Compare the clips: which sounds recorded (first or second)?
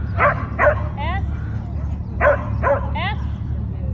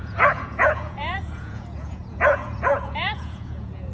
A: first